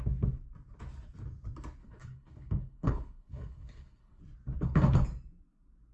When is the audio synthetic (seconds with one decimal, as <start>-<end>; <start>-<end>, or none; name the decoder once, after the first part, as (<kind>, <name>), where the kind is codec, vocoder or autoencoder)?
1.8-4.2 (codec, HILCodec)